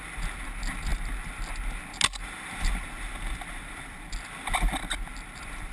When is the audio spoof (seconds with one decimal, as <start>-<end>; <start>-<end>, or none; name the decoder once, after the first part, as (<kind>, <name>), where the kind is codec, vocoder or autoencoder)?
none